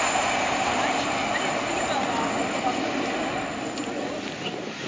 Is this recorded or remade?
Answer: recorded